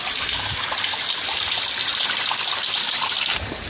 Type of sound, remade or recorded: recorded